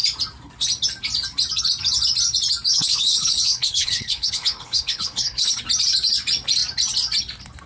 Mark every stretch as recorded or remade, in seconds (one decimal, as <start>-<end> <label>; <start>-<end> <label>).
0.0-2.7 recorded; 2.7-5.6 remade; 5.6-7.7 recorded